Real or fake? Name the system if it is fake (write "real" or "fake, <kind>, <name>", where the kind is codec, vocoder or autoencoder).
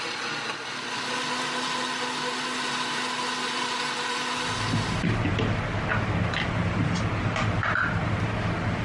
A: real